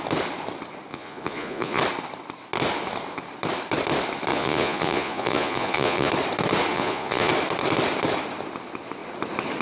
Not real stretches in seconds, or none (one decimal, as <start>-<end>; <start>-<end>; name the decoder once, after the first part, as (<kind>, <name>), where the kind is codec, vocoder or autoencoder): 0.9-1.8 (vocoder, Vocos); 4.3-6.1; 6.7-7.3